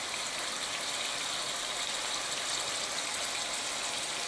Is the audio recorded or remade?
recorded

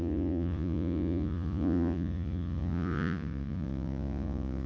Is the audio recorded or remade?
remade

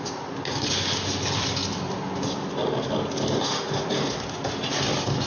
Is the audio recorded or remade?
recorded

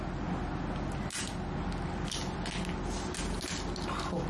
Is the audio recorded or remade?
recorded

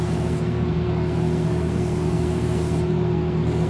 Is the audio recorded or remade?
remade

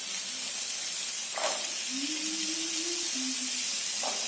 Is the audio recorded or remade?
recorded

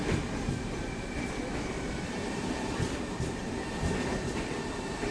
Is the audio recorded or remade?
remade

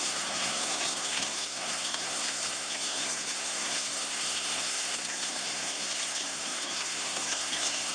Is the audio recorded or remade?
remade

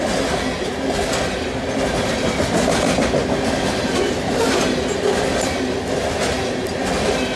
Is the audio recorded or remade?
recorded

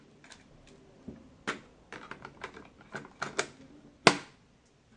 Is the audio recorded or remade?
recorded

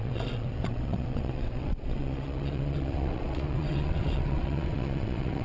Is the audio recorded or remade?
remade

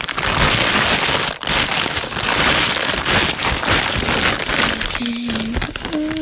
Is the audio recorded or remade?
recorded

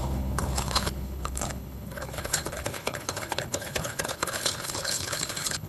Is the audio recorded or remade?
remade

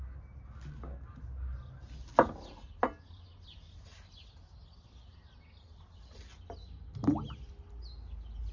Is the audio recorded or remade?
recorded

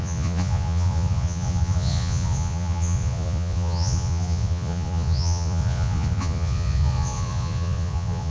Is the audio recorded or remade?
remade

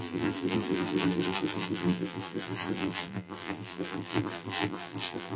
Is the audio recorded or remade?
remade